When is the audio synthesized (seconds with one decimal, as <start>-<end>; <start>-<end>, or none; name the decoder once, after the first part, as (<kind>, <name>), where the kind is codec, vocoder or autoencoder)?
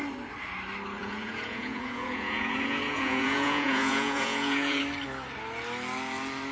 1.0-4.8 (vocoder, Vocos)